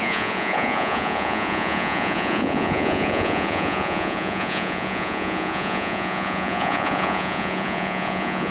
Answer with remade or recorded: remade